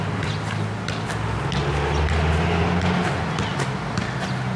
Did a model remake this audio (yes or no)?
no